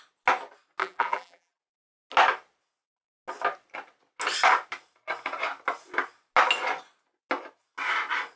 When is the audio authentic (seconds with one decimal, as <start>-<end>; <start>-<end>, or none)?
0.0-0.8; 1.6-8.4